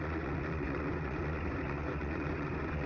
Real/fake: fake